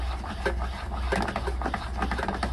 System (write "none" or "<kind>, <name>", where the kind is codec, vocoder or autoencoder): none